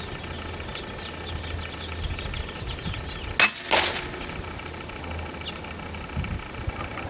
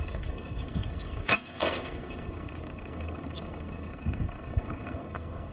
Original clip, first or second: first